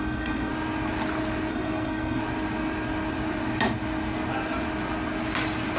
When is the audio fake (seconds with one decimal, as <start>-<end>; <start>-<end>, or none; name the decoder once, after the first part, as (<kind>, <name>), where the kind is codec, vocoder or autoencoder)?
0.0-0.5 (codec, SNAC); 1.5-2.2